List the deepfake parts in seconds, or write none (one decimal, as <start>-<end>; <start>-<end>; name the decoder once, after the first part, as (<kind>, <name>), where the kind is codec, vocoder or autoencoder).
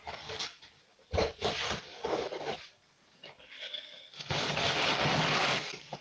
0.0-4.6 (codec, DAC); 5.2-6.0